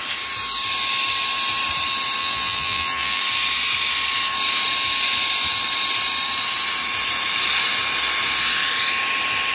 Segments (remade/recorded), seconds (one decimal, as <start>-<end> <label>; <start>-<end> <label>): 0.0-2.2 recorded; 2.2-3.2 remade; 3.2-9.5 recorded